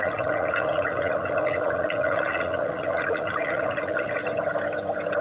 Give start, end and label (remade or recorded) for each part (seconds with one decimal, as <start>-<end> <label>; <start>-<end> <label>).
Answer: 0.0-4.2 remade; 4.2-5.2 recorded